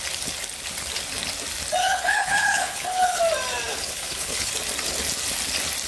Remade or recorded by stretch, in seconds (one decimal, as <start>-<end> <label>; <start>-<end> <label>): 0.0-1.8 recorded; 1.8-3.2 remade; 3.2-3.7 recorded; 3.7-4.5 remade; 4.5-5.9 recorded